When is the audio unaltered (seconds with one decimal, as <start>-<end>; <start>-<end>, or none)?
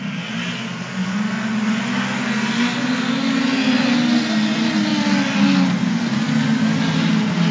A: 0.0-7.5